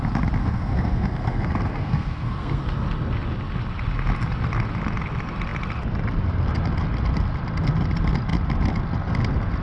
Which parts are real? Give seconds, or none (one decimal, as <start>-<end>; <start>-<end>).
0.0-0.4; 2.6-9.6